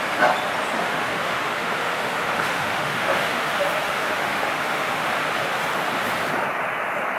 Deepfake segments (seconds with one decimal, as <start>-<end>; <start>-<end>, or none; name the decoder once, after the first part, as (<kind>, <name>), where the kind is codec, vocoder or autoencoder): 0.8-5.1 (autoencoder, DAC-VAE)